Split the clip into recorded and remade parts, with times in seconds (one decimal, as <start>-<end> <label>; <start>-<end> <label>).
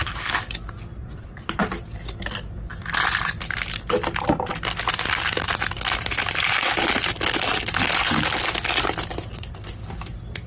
0.0-1.0 recorded; 1.0-1.6 remade; 1.6-10.5 recorded